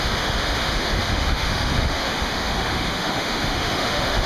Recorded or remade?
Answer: remade